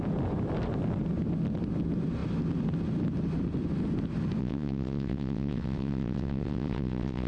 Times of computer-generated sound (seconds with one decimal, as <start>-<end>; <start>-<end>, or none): 4.4-7.3